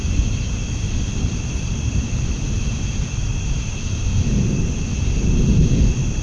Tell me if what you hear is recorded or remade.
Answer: recorded